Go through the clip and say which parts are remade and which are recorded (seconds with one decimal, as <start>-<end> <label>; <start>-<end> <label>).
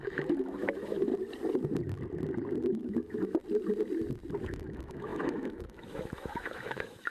0.0-1.1 remade; 1.1-2.7 recorded; 2.7-3.4 remade; 3.4-4.4 recorded; 4.4-7.1 remade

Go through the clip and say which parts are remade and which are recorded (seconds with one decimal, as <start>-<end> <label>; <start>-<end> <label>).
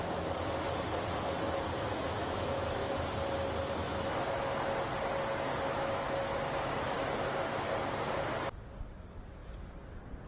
0.0-1.9 recorded; 1.9-2.9 remade; 2.9-3.8 recorded; 3.8-4.5 remade; 4.5-10.3 recorded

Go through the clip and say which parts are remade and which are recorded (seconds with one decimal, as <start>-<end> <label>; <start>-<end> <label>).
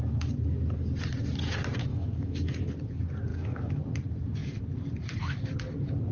0.0-1.9 recorded; 1.9-2.6 remade; 2.6-3.3 recorded; 3.3-3.8 remade; 3.8-6.1 recorded